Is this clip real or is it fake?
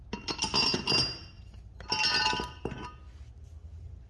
real